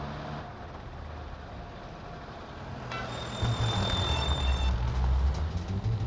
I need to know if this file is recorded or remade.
recorded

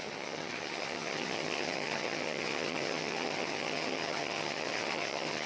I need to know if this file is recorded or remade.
remade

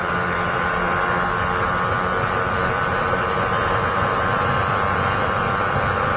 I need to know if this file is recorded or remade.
recorded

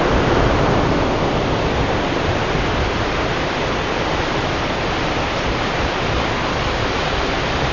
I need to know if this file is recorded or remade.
remade